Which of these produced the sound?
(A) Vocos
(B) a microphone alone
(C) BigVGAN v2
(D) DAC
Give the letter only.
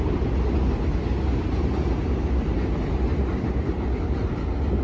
B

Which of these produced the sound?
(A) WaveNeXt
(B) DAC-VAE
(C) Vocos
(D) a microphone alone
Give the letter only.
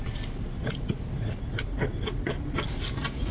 D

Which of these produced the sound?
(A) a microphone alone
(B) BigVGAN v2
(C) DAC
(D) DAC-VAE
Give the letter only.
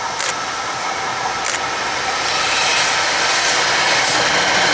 A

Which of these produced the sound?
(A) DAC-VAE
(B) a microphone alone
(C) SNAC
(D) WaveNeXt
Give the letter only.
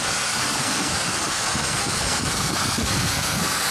C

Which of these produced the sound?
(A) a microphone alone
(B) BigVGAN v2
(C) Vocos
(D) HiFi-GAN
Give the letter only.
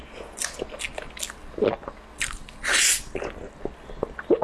A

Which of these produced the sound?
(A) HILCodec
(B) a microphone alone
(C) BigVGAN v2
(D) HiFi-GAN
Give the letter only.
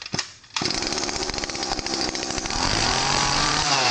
C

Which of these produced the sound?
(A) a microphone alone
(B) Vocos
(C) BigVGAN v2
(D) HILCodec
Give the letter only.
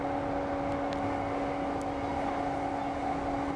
A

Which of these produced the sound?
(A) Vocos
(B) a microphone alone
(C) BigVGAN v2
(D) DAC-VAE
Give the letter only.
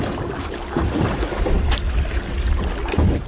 B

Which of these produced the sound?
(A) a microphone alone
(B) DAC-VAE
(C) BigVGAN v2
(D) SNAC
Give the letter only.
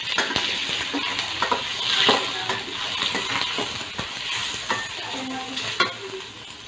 A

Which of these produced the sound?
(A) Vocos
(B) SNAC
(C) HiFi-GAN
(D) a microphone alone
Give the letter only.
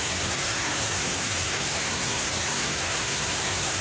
B